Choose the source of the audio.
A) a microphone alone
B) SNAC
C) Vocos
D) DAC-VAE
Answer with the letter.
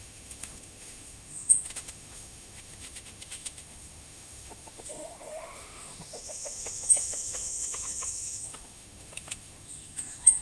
D